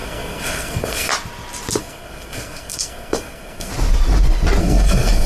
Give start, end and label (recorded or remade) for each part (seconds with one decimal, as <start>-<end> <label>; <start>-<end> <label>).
0.0-1.1 remade; 1.1-1.8 recorded; 1.8-3.7 remade; 3.7-4.6 recorded; 4.6-5.3 remade